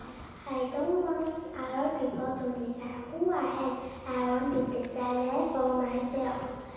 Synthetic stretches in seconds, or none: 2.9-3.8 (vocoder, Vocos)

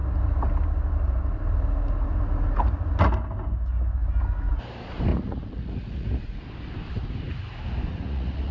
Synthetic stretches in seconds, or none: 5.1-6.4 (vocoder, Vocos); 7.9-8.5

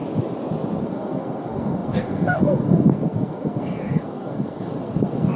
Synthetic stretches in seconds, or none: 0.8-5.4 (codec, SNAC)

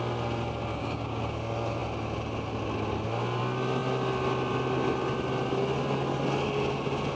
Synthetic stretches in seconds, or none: 0.7-1.2 (codec, DAC)